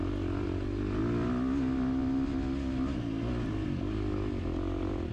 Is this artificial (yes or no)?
no